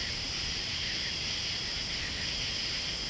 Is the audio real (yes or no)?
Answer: no